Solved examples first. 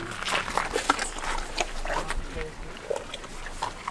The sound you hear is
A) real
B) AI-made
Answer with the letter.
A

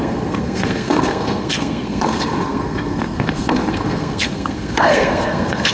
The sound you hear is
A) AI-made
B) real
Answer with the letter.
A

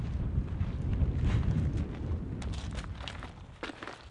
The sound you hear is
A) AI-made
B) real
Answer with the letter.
A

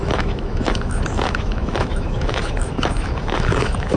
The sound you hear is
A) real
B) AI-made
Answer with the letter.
B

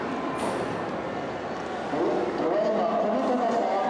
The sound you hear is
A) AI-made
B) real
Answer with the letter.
B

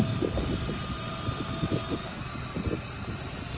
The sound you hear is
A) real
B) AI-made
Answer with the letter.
B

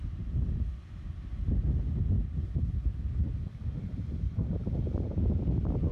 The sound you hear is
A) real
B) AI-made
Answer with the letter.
A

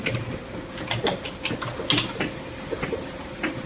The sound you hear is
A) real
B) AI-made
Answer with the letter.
A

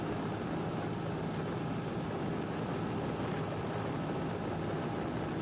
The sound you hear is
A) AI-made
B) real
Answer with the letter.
B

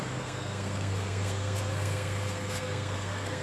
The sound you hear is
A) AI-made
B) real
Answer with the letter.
A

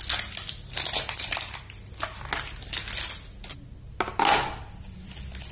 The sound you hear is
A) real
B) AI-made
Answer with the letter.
A